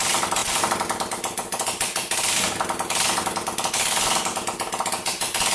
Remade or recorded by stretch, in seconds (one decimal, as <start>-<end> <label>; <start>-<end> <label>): 0.0-5.5 recorded